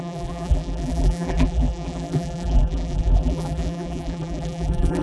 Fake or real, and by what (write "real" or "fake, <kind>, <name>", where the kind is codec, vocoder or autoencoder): fake, vocoder, BigVGAN v2